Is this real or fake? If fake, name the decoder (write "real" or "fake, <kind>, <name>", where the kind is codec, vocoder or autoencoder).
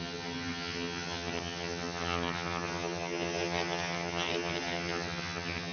fake, vocoder, HiFi-GAN